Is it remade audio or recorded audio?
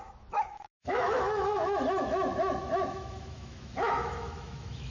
remade